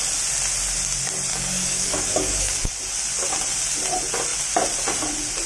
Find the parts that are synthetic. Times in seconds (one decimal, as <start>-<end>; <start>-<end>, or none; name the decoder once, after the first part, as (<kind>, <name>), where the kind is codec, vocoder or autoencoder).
1.3-2.7 (codec, DAC)